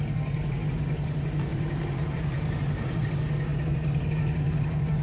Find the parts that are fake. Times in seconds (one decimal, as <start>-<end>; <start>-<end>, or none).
1.5-3.0